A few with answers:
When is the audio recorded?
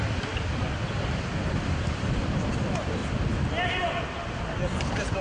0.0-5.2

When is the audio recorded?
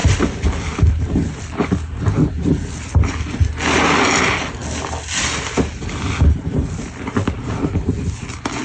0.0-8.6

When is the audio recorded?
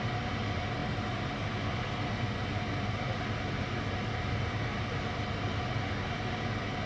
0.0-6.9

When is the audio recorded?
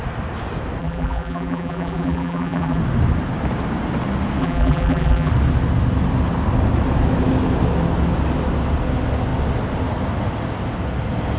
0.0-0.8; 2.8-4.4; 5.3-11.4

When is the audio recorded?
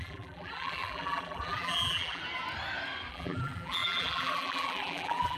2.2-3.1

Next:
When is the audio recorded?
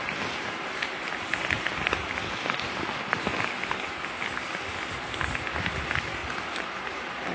0.0-6.2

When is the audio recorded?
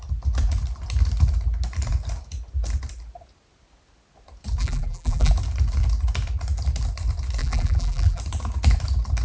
0.0-4.6; 5.3-7.4; 8.2-9.2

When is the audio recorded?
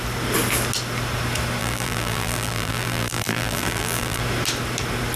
0.0-1.6; 4.2-5.2